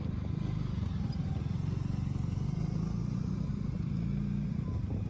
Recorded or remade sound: recorded